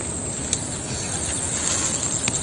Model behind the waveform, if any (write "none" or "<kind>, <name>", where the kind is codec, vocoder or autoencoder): none